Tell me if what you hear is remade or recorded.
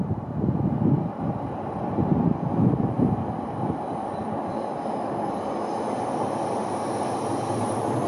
recorded